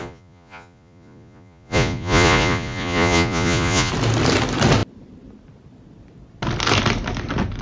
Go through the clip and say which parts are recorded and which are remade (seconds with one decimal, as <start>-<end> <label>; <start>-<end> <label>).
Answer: 0.0-3.9 remade; 3.9-7.6 recorded